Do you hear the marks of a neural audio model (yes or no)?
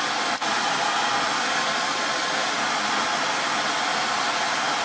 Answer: no